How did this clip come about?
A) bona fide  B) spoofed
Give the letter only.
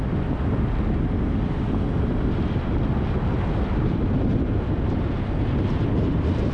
A